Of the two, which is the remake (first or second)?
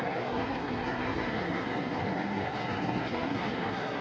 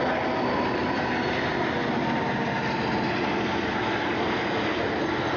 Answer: first